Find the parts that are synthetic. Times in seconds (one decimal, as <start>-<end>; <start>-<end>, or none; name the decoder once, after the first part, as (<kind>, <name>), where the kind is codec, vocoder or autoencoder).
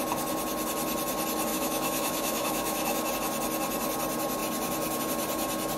1.5-3.1 (autoencoder, DAC-VAE)